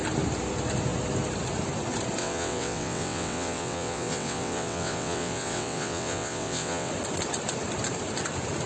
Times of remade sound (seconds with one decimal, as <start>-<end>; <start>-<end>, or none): 2.2-6.9

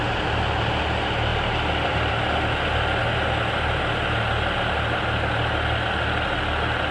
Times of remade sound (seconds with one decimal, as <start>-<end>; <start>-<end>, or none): none

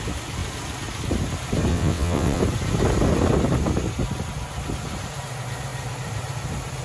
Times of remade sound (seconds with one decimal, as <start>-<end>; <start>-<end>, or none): 1.7-2.4

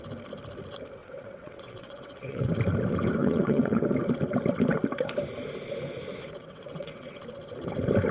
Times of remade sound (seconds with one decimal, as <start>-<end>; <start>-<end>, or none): 1.0-2.5; 3.2-3.8; 6.4-7.2

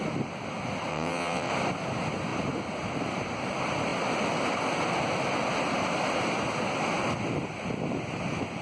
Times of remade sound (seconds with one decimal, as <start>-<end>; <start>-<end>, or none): 0.9-1.5